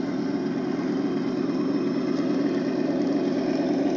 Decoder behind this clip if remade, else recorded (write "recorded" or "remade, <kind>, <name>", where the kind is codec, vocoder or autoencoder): recorded